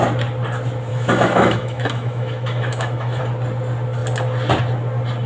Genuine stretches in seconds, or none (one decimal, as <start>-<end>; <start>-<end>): 0.0-0.9; 3.2-5.3